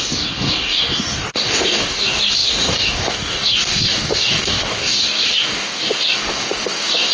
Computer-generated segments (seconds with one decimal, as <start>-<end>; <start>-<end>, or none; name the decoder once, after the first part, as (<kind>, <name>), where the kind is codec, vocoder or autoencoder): 0.0-7.1 (codec, DAC)